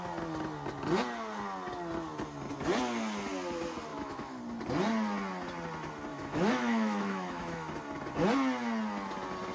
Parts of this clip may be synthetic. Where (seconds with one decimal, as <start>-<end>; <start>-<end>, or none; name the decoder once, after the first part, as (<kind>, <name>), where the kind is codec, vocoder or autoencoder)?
3.9-4.4 (autoencoder, DAC-VAE); 6.1-7.7